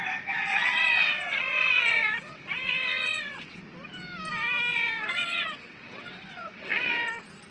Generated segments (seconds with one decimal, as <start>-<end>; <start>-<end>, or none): 0.5-3.6; 4.7-7.1